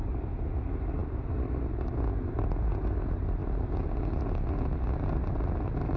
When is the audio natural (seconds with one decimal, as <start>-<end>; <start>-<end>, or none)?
0.0-6.0